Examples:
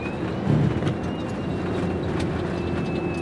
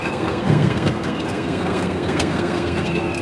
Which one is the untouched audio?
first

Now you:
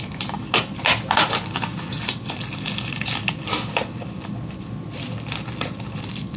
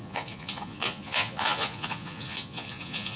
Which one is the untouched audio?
first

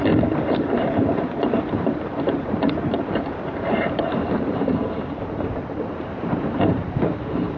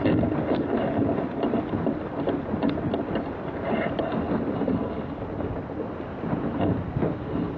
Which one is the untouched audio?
second